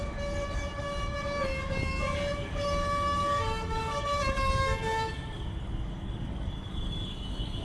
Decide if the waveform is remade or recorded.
remade